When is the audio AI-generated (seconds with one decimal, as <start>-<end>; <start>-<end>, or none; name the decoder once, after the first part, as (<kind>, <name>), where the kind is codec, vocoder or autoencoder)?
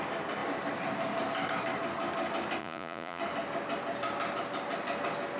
2.6-3.2 (vocoder, Vocos)